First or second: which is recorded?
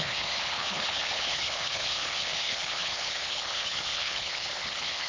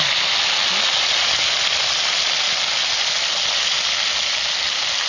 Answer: second